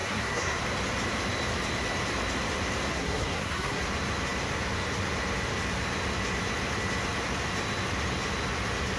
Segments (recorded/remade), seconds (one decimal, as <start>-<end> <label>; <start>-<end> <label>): 0.0-0.6 remade; 0.6-2.9 recorded; 2.9-3.8 remade; 3.8-9.0 recorded